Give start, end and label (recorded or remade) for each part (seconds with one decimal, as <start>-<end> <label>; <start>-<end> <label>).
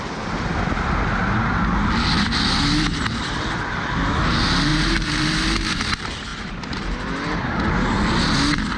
0.0-4.7 recorded; 4.7-5.8 remade; 5.8-8.8 recorded